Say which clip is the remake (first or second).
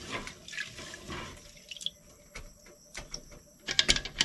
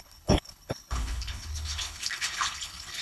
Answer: second